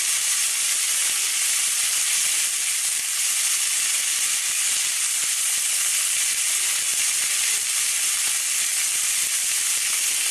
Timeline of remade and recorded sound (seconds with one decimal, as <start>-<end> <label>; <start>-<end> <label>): 0.0-7.5 recorded; 7.5-9.1 remade; 9.1-10.3 recorded

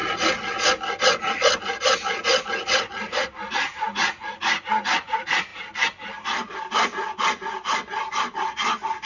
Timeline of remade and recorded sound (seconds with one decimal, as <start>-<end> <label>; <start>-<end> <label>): 0.0-3.5 recorded; 3.5-5.5 remade; 5.5-9.1 recorded

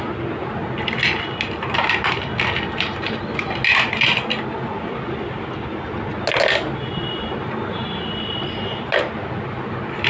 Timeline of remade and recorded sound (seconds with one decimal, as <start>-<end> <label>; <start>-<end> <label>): 0.0-10.1 recorded

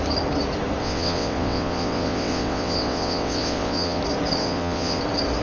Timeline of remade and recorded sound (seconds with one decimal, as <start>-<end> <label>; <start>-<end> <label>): 0.0-0.8 recorded; 0.8-4.0 remade; 4.0-4.4 recorded; 4.4-5.0 remade; 5.0-5.4 recorded

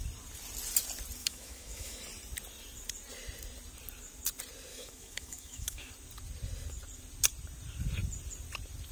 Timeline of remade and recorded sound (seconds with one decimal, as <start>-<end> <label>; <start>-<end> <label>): 0.0-1.2 recorded; 1.2-2.0 remade; 2.0-4.7 recorded; 4.7-5.9 remade; 5.9-8.9 recorded

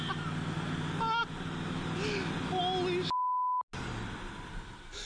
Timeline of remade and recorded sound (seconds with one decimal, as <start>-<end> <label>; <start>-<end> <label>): 0.0-5.1 recorded

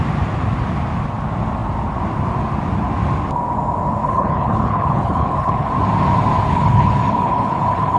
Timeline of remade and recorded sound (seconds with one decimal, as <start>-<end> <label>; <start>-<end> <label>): 0.0-4.0 recorded; 4.0-5.7 remade; 5.7-6.5 recorded; 6.5-8.0 remade